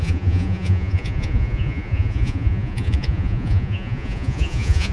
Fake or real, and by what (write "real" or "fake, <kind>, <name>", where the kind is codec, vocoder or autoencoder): fake, vocoder, Vocos